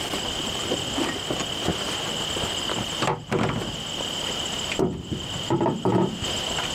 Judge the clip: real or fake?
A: real